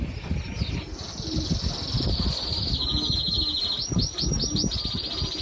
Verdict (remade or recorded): recorded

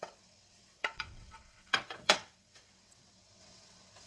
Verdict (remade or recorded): remade